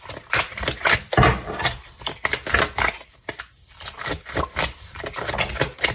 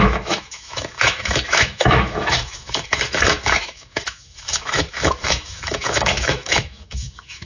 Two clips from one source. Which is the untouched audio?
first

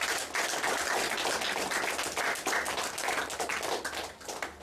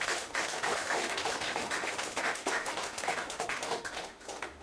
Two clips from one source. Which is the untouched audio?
first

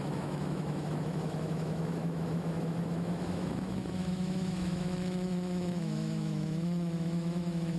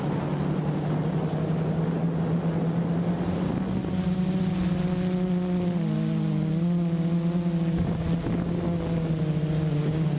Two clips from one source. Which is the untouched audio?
second